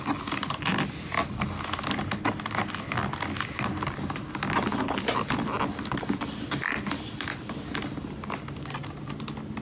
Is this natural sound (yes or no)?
yes